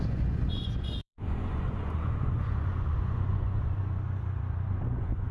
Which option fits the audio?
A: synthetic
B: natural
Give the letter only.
A